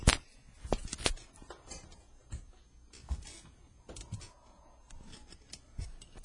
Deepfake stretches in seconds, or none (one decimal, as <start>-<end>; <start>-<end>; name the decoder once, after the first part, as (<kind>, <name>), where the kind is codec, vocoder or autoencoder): none